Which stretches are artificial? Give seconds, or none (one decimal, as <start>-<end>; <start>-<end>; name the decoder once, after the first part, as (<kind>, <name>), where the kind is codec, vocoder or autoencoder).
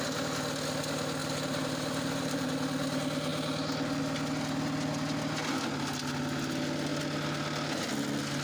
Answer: 1.2-2.5 (vocoder, BigVGAN v2)